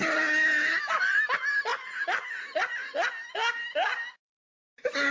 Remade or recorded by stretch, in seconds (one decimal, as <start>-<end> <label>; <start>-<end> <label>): 0.0-5.1 recorded